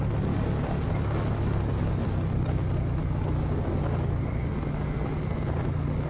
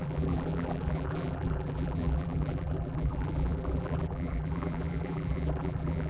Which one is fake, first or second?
second